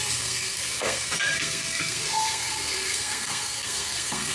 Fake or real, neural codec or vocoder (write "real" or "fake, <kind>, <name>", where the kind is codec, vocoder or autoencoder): fake, codec, SNAC